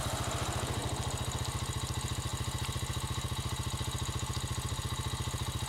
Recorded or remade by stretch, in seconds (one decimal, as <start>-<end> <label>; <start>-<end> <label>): 0.0-5.7 recorded

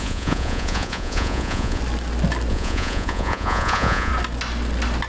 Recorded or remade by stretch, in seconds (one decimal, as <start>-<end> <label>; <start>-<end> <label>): 0.0-1.8 remade; 1.8-2.5 recorded; 2.5-4.1 remade; 4.1-5.1 recorded

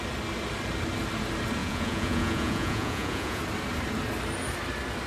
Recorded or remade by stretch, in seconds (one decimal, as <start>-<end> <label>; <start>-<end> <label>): 0.0-1.6 recorded; 1.6-3.4 remade; 3.4-5.1 recorded

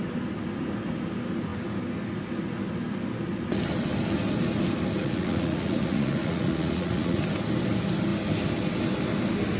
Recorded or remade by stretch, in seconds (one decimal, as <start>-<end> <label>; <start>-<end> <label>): 0.0-5.0 recorded; 5.0-7.2 remade; 7.2-9.6 recorded